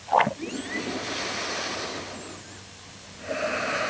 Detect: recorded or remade recorded